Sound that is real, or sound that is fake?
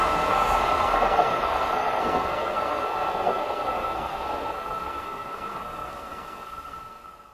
fake